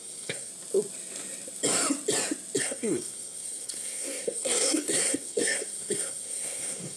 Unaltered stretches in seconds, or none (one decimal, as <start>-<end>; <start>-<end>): 0.5-2.6